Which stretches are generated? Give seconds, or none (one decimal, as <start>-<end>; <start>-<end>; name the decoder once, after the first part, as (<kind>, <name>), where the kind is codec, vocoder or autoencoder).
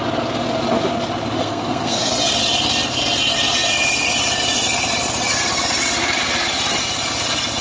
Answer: 1.4-2.1 (codec, SNAC)